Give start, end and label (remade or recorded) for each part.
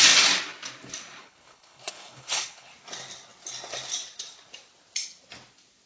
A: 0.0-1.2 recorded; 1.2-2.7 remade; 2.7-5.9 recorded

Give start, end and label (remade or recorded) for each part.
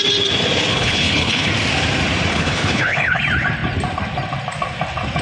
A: 0.0-0.7 recorded; 0.7-1.5 remade; 1.5-2.3 recorded; 2.3-3.2 remade; 3.2-5.2 recorded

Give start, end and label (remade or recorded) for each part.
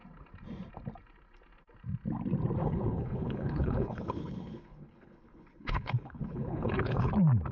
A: 0.0-2.6 recorded; 2.6-7.1 remade; 7.1-7.5 recorded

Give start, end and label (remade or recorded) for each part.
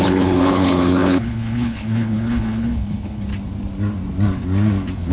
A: 0.0-3.3 remade; 3.3-5.1 recorded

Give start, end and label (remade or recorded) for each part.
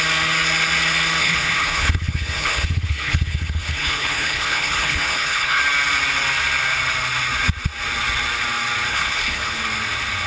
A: 0.0-1.2 recorded; 1.2-5.6 remade; 5.6-8.9 recorded; 8.9-9.6 remade; 9.6-10.3 recorded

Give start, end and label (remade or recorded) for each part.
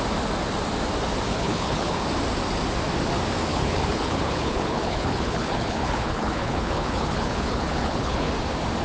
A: 0.0-1.3 recorded; 1.3-2.0 remade; 2.0-3.5 recorded; 3.5-8.3 remade; 8.3-8.8 recorded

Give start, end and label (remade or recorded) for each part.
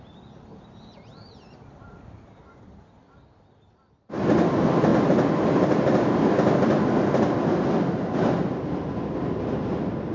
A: 0.0-10.1 recorded